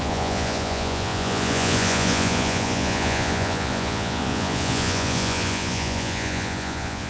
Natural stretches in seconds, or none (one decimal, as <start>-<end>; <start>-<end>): none